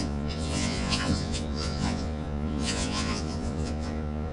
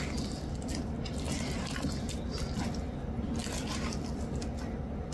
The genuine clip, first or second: second